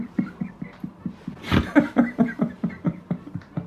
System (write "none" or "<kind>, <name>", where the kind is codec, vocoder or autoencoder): vocoder, BigVGAN v2